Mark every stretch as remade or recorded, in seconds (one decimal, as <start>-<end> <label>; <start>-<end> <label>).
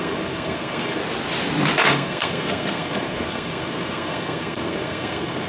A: 0.0-1.0 remade; 1.0-1.8 recorded; 1.8-5.5 remade